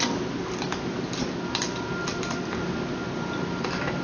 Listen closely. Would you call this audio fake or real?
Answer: real